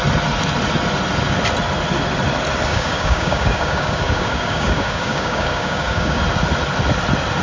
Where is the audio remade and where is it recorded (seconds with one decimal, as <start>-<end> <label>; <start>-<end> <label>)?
0.0-2.7 recorded; 2.7-6.2 remade; 6.2-7.4 recorded